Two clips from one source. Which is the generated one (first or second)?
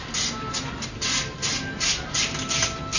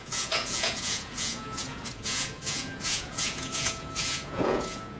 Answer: second